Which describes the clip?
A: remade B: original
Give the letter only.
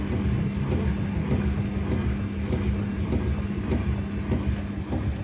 B